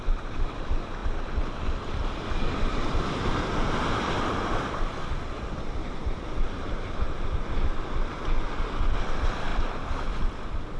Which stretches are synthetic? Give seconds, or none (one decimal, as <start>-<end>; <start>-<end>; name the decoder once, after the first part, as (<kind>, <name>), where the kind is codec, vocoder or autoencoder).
none